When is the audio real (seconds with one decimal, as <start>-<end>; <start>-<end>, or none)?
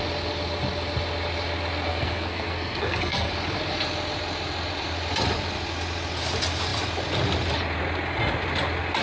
0.0-1.9; 3.3-9.0